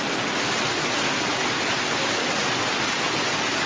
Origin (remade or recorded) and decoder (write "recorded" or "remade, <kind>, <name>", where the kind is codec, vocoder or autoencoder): recorded